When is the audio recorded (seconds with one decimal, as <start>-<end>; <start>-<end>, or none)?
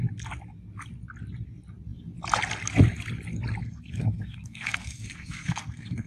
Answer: 0.0-3.6